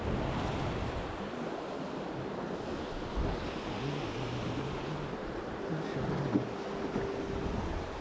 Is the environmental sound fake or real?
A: real